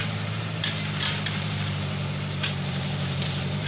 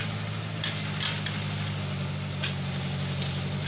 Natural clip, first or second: second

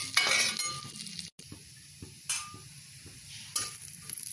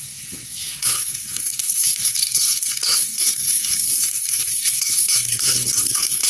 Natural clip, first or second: first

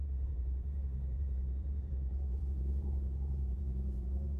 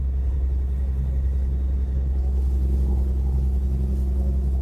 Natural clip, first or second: second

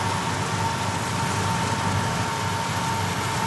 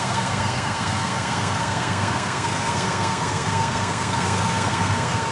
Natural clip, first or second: first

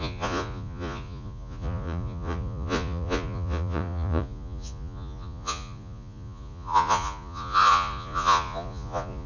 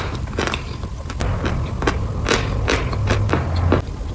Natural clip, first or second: second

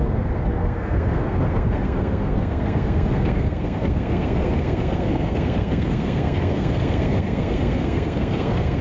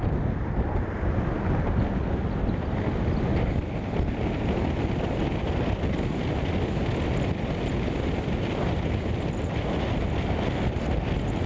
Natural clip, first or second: second